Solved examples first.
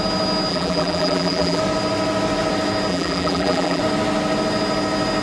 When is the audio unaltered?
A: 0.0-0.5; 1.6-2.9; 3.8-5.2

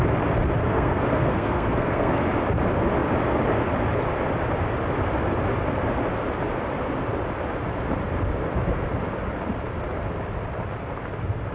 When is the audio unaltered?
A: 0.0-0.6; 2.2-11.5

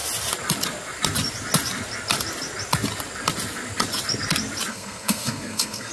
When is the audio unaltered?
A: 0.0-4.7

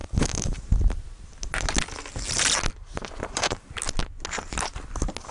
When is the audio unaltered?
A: 0.6-2.8; 3.7-5.3

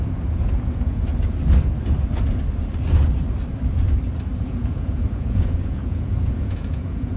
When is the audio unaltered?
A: 1.1-4.4